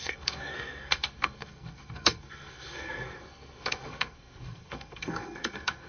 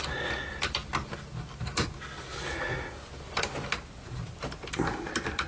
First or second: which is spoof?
first